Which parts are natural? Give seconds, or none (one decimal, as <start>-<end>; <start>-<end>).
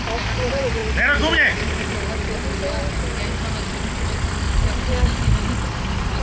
0.0-6.2